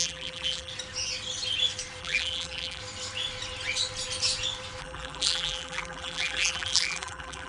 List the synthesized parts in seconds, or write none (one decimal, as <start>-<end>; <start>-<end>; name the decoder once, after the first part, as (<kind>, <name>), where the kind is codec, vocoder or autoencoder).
0.0-0.7 (vocoder, BigVGAN v2); 2.0-2.8; 4.8-7.5